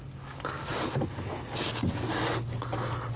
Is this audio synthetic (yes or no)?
no